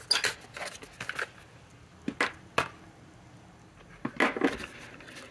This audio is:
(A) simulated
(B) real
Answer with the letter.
B